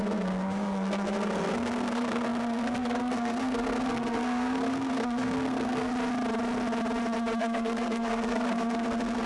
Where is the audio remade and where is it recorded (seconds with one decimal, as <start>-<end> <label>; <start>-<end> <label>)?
0.0-5.9 remade; 5.9-7.4 recorded; 7.4-9.3 remade